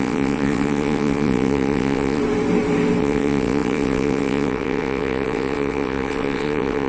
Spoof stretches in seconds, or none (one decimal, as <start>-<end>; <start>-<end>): 0.0-2.2; 3.0-6.9